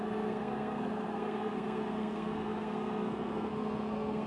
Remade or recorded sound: remade